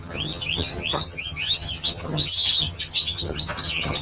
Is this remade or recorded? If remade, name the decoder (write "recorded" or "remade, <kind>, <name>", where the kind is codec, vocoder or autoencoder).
remade, vocoder, HiFi-GAN